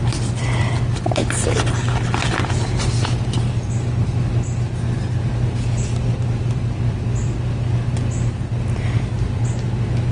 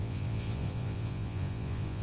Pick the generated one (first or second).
second